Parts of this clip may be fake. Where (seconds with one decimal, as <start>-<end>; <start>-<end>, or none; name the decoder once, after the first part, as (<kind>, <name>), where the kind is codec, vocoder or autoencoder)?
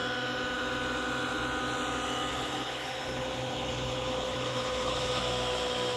2.3-5.2 (codec, HILCodec)